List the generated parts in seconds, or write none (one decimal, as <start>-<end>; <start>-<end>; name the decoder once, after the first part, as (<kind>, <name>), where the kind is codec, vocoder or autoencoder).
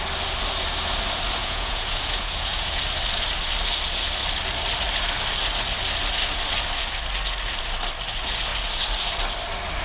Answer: 1.4-2.8 (vocoder, Vocos)